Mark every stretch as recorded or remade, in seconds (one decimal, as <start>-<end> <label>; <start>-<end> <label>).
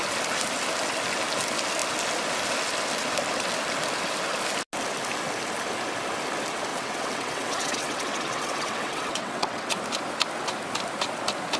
0.0-6.7 recorded; 6.7-9.8 remade; 9.8-11.6 recorded